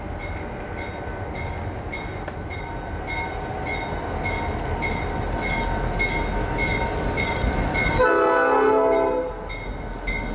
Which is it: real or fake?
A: real